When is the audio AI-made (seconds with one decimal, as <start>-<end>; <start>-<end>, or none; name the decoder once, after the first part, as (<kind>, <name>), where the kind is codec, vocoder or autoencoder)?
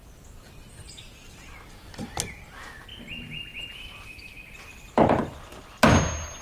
none